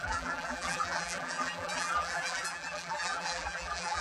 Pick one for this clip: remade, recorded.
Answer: remade